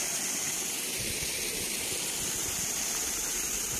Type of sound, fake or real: real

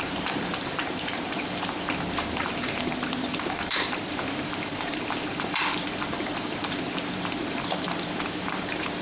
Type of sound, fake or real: fake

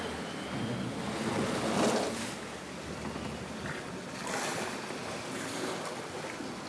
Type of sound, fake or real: real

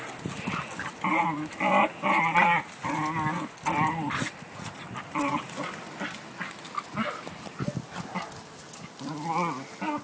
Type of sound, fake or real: real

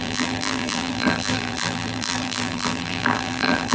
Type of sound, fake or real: fake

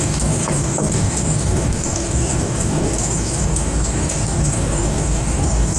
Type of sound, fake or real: fake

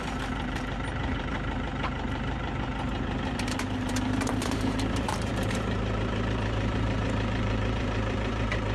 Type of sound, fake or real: fake